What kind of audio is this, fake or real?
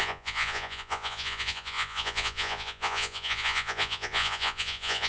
fake